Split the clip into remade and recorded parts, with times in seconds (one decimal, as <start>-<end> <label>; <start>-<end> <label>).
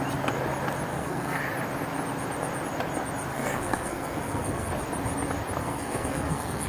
0.0-0.9 recorded; 0.9-1.4 remade; 1.4-3.3 recorded; 3.3-4.7 remade; 4.7-5.6 recorded; 5.6-6.7 remade